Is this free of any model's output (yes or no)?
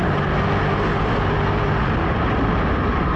yes